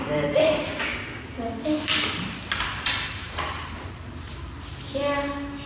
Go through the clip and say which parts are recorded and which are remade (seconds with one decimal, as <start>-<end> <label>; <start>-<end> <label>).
0.0-3.2 recorded; 3.2-4.3 remade; 4.3-5.7 recorded

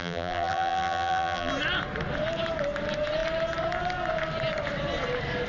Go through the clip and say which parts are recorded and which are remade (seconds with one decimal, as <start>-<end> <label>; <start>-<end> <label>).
0.0-1.5 remade; 1.5-5.5 recorded

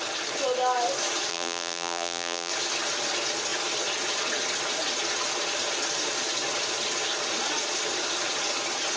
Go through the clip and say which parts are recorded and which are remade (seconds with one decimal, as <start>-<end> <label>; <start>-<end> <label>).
0.0-1.3 recorded; 1.3-2.5 remade; 2.5-9.0 recorded